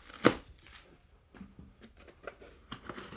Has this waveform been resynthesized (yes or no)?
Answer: no